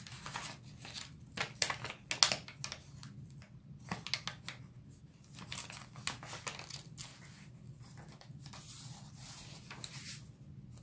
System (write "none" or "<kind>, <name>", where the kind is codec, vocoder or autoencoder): none